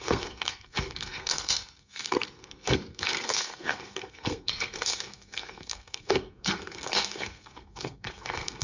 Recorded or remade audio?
remade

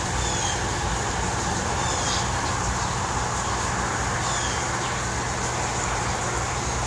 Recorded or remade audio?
recorded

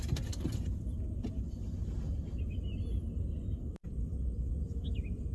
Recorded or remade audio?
recorded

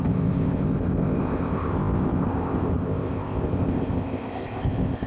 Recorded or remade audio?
remade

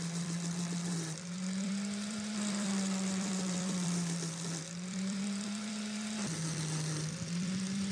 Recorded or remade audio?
remade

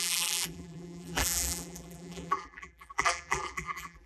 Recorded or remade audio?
remade